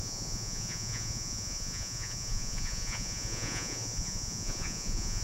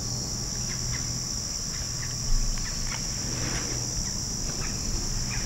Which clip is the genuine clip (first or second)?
second